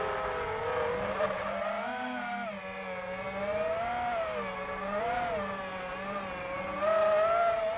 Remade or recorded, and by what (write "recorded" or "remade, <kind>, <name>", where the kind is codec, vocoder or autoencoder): recorded